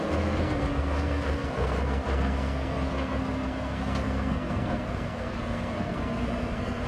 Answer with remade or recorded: remade